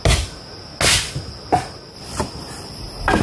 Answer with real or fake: real